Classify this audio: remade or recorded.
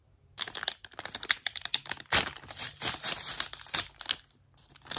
recorded